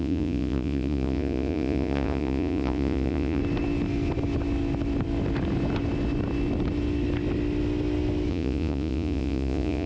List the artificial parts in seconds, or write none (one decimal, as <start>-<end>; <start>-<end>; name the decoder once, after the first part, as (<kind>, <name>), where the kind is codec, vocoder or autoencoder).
0.0-3.4 (vocoder, Vocos); 8.3-9.9